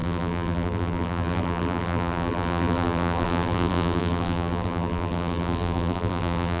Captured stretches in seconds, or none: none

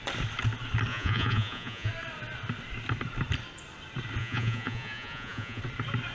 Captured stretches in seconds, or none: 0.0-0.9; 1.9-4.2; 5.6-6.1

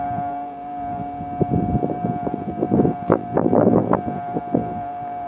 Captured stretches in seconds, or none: 1.0-1.9